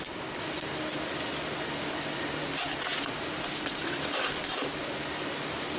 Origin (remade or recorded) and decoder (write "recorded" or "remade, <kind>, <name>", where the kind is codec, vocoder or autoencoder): recorded